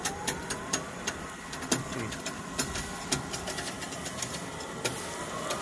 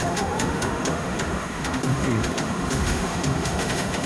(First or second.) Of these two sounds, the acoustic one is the first